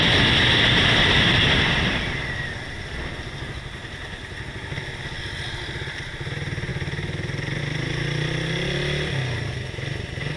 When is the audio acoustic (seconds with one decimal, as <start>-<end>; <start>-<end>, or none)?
0.0-10.4